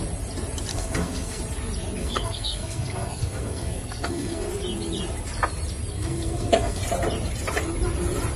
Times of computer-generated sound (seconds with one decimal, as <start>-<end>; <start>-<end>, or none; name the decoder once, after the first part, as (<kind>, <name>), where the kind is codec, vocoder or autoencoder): 0.7-1.4 (codec, SNAC); 2.0-4.5; 5.9-6.8